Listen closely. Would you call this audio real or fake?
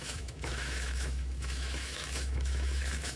fake